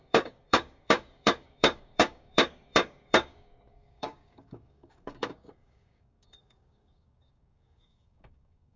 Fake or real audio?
fake